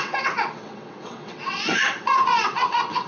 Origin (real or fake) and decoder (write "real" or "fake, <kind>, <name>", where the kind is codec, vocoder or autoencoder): fake, vocoder, WaveNeXt